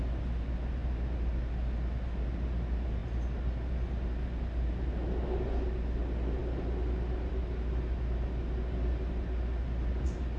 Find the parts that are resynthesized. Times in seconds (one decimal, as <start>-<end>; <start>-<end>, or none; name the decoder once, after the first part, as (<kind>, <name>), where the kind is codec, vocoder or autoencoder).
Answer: none